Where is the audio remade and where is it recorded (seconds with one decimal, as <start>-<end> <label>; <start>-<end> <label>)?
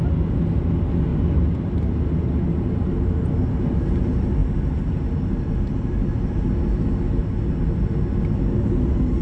0.0-9.2 recorded